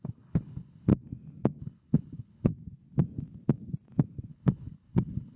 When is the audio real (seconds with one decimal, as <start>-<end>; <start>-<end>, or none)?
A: 0.9-1.6; 2.5-4.3